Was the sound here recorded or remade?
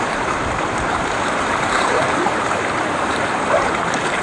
remade